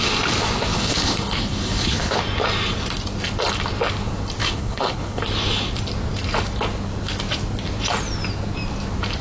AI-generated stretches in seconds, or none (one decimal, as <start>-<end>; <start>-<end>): 0.7-2.2; 4.4-5.2